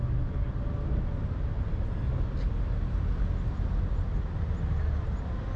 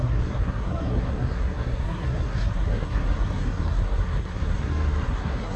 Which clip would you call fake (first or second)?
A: second